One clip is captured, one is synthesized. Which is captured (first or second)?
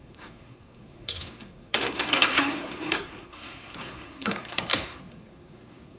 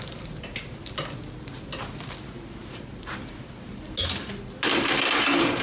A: second